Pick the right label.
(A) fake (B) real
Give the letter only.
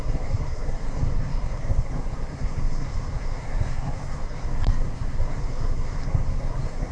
A